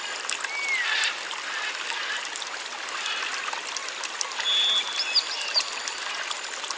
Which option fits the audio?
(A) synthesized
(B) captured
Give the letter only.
B